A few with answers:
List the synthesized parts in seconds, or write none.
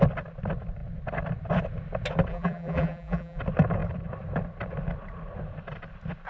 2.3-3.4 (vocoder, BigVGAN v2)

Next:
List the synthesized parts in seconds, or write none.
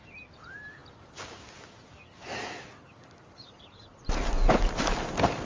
0.8-3.8 (vocoder, BigVGAN v2)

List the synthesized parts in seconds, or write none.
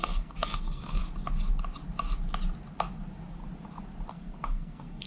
0.0-1.0 (codec, SNAC); 4.1-5.1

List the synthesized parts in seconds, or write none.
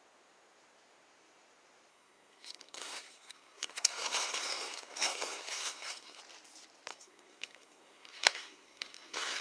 1.9-6.2 (codec, SNAC); 6.9-9.4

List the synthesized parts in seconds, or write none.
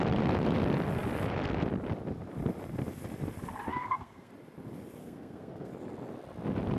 3.7-4.3 (codec, SNAC); 5.0-5.7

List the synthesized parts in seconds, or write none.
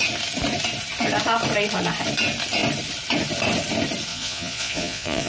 4.1-5.3 (vocoder, Vocos)